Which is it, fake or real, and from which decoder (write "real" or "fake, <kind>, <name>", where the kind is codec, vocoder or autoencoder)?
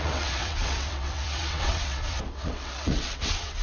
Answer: fake, vocoder, WaveNeXt